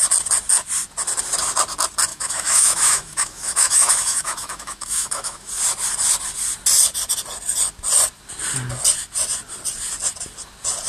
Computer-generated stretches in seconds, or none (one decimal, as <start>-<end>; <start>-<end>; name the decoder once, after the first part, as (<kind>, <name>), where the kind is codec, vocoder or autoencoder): 2.1-5.5 (autoencoder, DAC-VAE)